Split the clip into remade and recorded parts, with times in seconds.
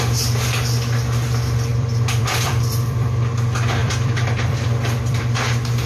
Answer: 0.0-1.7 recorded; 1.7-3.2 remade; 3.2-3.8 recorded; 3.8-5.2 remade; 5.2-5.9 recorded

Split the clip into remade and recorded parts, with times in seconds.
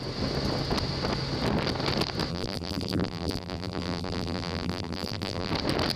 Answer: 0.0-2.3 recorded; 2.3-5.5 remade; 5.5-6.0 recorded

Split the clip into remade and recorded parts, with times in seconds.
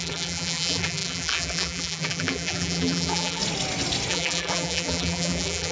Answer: 0.0-3.4 remade; 3.4-4.1 recorded; 4.1-5.7 remade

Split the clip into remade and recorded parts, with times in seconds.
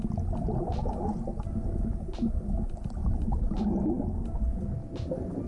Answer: 0.0-3.0 recorded; 3.0-3.6 remade; 3.6-5.5 recorded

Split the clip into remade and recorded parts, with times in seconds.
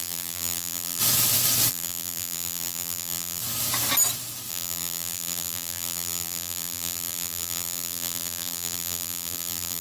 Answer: 0.0-1.0 remade; 1.0-1.7 recorded; 1.7-3.4 remade; 3.4-4.5 recorded; 4.5-9.8 remade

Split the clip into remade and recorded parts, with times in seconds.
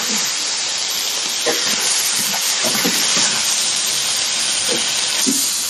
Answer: 0.0-0.7 recorded; 0.7-4.1 remade; 4.1-5.7 recorded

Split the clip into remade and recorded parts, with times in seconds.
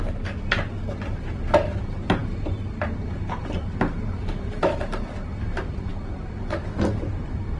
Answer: 0.0-7.6 recorded